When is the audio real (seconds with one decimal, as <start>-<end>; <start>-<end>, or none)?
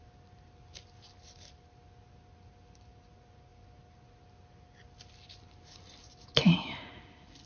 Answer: 0.0-7.5